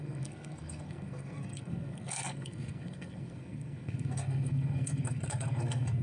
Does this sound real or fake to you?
fake